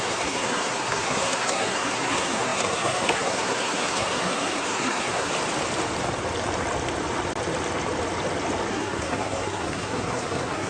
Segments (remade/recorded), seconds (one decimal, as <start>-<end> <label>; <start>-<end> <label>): 0.0-5.3 remade; 5.3-8.7 recorded; 8.7-10.7 remade